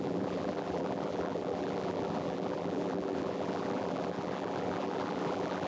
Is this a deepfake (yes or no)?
yes